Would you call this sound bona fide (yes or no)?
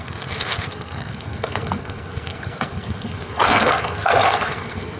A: no